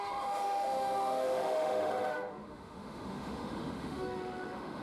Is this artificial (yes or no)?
yes